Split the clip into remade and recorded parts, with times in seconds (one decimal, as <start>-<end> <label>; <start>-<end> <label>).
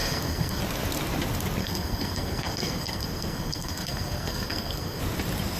0.0-0.6 remade; 0.6-1.6 recorded; 1.6-5.0 remade; 5.0-5.6 recorded